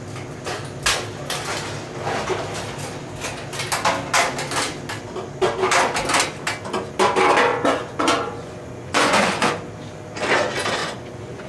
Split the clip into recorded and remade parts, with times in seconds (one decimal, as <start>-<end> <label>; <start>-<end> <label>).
0.0-7.5 recorded; 7.5-9.5 remade; 9.5-10.8 recorded; 10.8-11.5 remade